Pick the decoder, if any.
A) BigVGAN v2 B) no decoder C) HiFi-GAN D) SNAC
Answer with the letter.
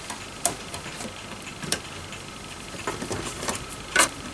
A